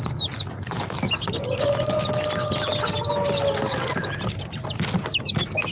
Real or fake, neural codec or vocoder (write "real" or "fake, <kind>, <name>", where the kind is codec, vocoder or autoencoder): real